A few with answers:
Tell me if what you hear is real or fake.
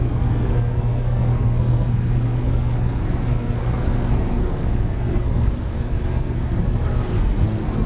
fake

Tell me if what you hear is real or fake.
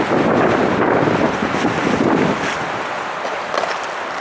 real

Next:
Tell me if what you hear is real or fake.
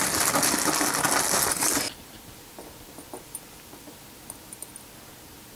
real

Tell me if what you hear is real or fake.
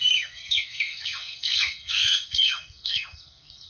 fake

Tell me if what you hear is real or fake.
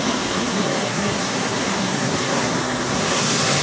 fake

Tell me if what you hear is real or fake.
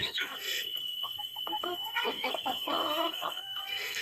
fake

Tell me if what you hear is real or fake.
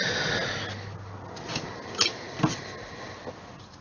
real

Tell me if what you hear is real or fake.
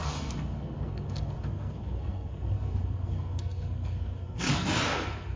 fake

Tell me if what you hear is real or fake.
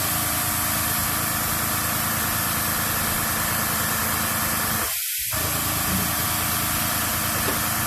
real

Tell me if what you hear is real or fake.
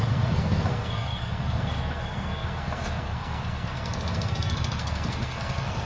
fake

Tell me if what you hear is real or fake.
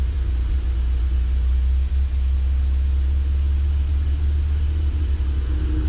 real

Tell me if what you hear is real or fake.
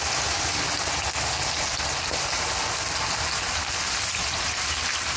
real